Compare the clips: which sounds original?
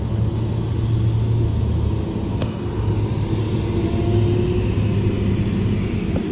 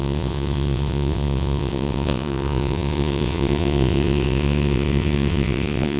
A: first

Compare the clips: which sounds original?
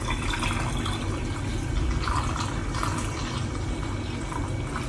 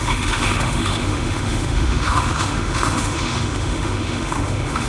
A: first